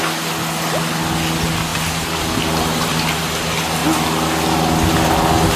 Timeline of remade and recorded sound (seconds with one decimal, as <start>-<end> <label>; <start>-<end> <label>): 0.0-1.7 recorded; 1.7-3.0 remade; 3.0-5.6 recorded